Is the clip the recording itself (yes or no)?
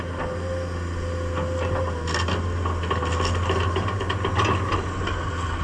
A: yes